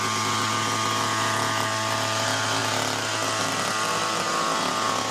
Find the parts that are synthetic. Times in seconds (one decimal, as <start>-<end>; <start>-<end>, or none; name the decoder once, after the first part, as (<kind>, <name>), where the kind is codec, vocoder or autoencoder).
none